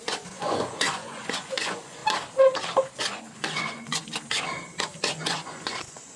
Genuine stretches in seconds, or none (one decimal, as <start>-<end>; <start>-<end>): 2.0-3.0; 4.0-5.0